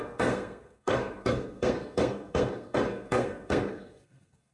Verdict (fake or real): fake